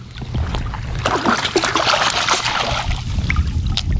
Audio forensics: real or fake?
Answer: real